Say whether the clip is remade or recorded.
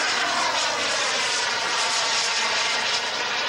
remade